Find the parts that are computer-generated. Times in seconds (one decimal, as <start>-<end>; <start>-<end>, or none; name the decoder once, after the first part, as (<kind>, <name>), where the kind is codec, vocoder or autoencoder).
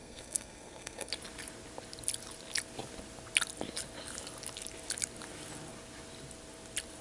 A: 0.0-1.1 (codec, SNAC)